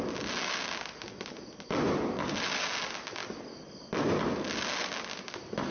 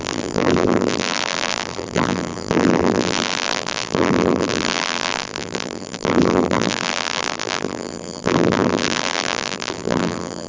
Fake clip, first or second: second